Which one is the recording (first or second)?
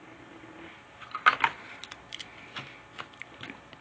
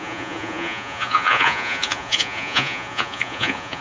first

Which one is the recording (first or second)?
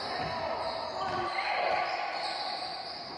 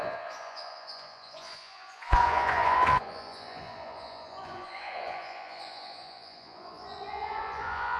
first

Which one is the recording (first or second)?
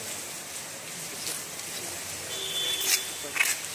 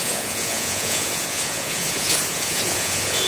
first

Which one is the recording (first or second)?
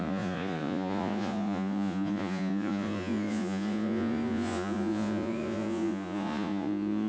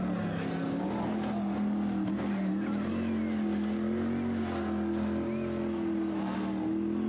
second